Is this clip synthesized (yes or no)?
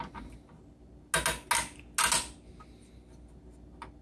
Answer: no